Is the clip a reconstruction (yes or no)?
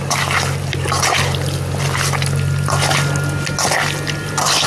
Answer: no